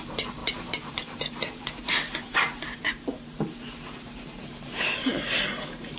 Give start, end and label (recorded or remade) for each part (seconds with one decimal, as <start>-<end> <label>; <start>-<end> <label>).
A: 0.0-6.0 remade